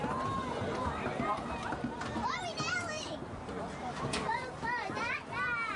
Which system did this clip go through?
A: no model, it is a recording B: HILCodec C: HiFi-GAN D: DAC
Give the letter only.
A